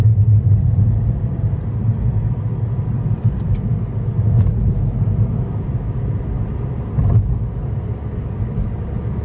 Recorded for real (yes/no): yes